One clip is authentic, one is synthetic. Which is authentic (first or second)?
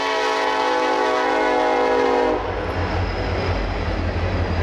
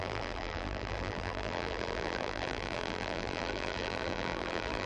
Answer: first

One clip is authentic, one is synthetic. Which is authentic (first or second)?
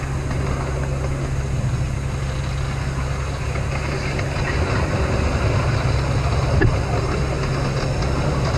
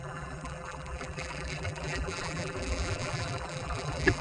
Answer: first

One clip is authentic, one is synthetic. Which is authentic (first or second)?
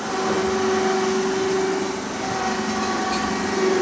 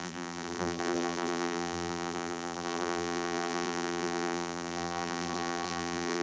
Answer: first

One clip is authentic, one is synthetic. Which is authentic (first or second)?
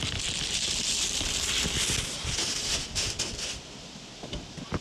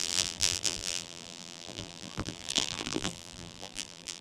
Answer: first